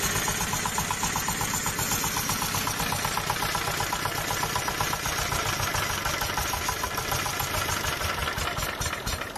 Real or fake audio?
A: real